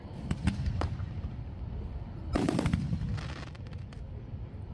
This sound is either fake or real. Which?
fake